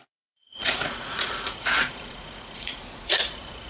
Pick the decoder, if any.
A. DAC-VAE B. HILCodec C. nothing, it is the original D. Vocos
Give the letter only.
D